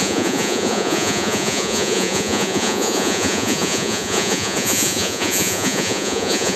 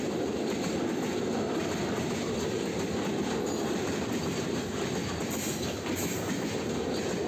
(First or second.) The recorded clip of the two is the second